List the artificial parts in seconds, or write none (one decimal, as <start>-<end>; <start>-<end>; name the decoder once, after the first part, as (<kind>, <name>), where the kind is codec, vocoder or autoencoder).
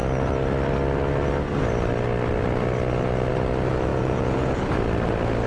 3.9-4.6 (vocoder, Vocos)